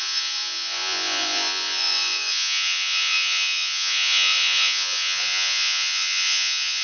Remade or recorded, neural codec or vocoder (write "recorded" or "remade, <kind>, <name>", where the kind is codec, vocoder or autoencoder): remade, vocoder, Vocos